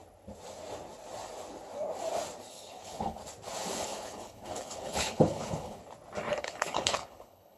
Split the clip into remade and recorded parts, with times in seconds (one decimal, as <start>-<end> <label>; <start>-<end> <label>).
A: 0.0-2.5 recorded; 2.5-3.2 remade; 3.2-3.7 recorded; 3.7-5.8 remade; 5.8-6.4 recorded; 6.4-7.6 remade